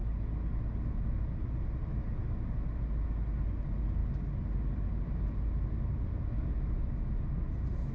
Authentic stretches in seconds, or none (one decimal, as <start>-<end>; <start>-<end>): 0.0-7.9